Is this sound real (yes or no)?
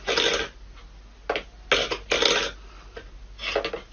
yes